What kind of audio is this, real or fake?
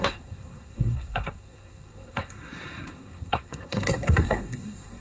fake